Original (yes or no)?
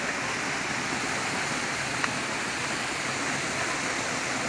yes